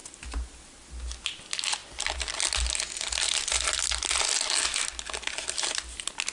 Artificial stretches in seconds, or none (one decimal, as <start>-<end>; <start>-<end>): none